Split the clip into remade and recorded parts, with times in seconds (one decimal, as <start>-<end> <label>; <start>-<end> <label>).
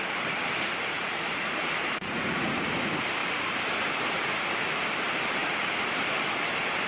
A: 0.0-0.9 recorded; 0.9-2.7 remade; 2.7-6.9 recorded